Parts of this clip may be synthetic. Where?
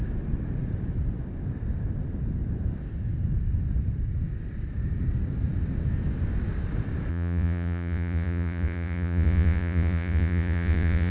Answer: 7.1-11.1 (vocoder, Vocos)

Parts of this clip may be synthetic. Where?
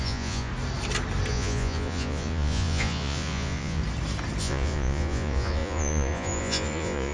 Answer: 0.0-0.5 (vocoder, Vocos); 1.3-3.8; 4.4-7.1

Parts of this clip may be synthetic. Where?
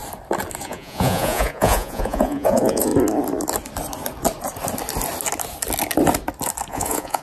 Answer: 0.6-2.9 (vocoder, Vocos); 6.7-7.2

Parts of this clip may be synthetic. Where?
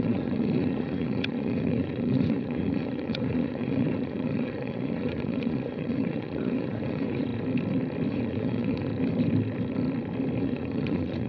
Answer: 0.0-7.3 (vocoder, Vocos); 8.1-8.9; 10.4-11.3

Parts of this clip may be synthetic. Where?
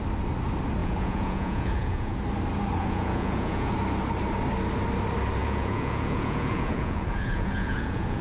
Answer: 0.8-2.2 (vocoder, Vocos); 2.8-3.7; 5.4-8.2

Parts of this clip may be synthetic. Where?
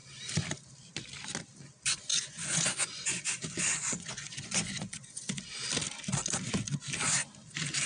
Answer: 2.1-5.4 (vocoder, Vocos)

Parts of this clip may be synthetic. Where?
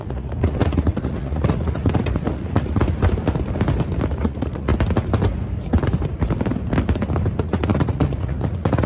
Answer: 0.0-2.8 (vocoder, Vocos); 4.1-4.7; 7.4-8.9